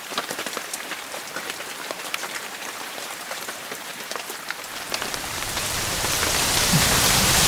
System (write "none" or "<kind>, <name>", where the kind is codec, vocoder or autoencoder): vocoder, BigVGAN v2